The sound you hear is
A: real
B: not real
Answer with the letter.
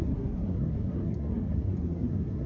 B